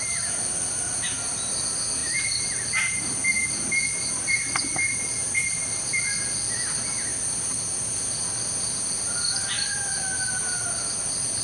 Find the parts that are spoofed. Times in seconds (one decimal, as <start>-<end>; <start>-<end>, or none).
2.0-3.5; 5.2-6.2